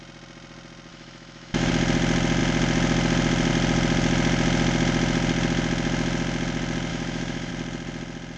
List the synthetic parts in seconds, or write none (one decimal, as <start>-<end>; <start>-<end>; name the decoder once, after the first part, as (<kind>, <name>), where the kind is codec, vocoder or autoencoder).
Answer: 0.9-1.7 (autoencoder, DAC-VAE); 6.9-7.5